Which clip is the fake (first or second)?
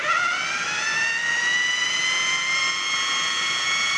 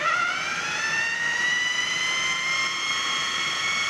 second